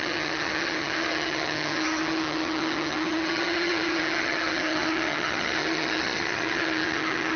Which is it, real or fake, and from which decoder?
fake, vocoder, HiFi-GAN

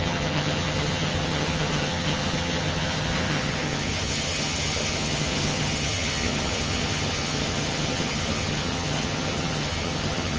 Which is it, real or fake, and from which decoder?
fake, vocoder, HiFi-GAN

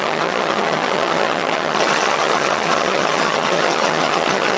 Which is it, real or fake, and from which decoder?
fake, vocoder, HiFi-GAN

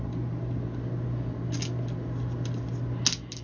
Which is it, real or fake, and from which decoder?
real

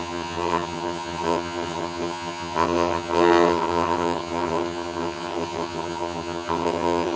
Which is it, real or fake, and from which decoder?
fake, vocoder, HiFi-GAN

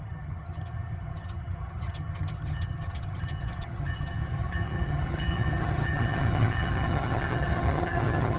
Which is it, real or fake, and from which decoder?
fake, vocoder, HiFi-GAN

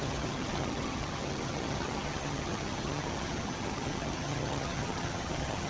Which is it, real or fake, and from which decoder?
fake, vocoder, HiFi-GAN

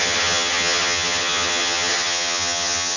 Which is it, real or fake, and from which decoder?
fake, vocoder, HiFi-GAN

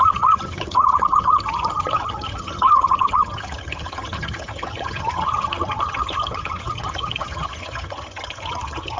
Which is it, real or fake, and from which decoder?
fake, vocoder, HiFi-GAN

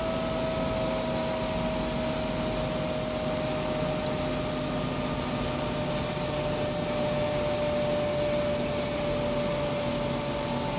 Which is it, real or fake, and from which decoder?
real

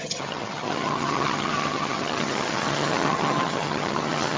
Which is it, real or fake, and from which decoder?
fake, vocoder, HiFi-GAN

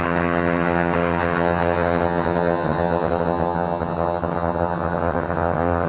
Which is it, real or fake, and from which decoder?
fake, vocoder, HiFi-GAN